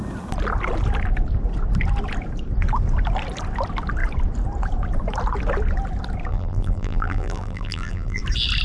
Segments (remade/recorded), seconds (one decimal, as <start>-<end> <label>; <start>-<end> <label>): 0.0-6.3 recorded; 6.3-8.2 remade; 8.2-8.6 recorded